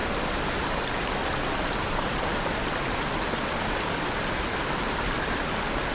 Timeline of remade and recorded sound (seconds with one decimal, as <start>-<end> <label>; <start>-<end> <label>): 0.0-1.2 recorded; 1.2-1.7 remade; 1.7-5.9 recorded